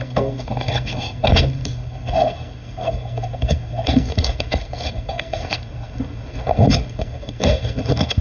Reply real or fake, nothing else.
fake